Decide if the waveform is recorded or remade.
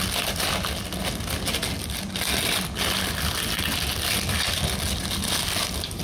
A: recorded